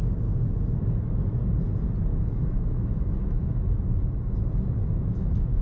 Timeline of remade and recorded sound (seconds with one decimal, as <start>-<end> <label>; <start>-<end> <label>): 0.0-2.1 recorded; 2.1-5.6 remade